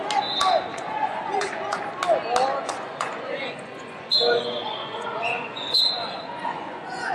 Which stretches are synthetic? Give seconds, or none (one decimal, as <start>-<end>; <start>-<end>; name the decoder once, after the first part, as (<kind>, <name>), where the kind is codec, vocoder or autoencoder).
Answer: 0.7-1.8 (vocoder, Vocos); 2.5-7.1